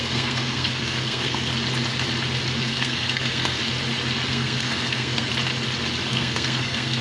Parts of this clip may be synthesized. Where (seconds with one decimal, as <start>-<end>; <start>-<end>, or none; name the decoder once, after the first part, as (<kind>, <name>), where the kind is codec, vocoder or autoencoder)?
0.0-1.5 (codec, SNAC); 2.6-3.6; 4.3-5.3; 6.1-7.0